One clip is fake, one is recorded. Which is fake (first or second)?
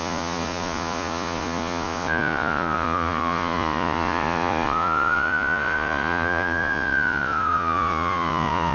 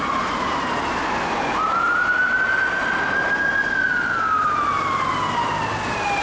first